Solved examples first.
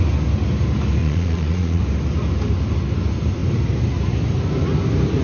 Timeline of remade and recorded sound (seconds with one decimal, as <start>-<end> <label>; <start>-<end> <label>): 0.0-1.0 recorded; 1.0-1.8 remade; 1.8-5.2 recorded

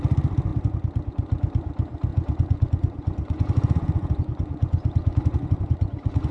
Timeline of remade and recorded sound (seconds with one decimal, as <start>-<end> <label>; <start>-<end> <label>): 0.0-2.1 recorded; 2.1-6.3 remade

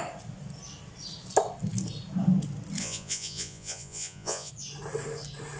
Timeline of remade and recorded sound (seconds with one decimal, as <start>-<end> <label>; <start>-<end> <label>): 0.0-2.8 recorded; 2.8-4.5 remade; 4.5-5.6 recorded